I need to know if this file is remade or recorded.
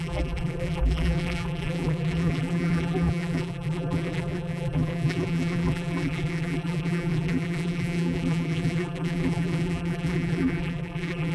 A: remade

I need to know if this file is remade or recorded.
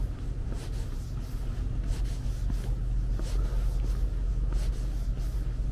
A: recorded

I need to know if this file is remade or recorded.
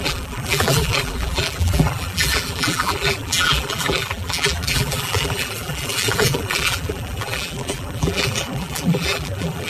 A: remade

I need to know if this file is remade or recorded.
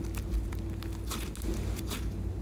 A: recorded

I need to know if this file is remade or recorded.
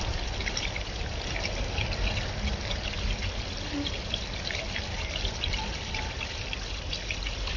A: remade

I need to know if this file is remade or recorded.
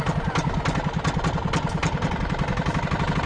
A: recorded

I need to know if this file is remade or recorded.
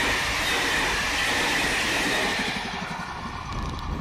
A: recorded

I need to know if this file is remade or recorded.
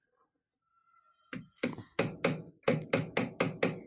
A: recorded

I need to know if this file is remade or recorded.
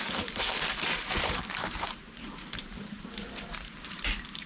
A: remade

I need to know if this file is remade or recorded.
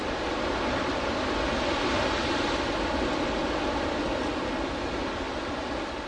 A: recorded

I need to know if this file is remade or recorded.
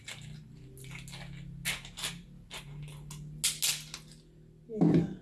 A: recorded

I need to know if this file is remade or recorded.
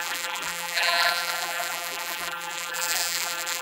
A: remade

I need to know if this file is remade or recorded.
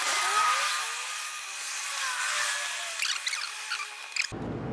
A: recorded